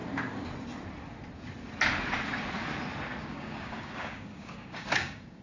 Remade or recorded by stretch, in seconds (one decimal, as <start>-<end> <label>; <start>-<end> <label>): 0.0-3.2 recorded; 3.2-5.4 remade